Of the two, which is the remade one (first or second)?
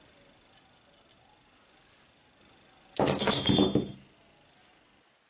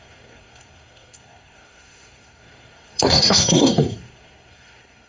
second